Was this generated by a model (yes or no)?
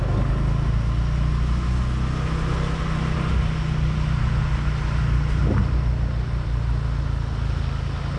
no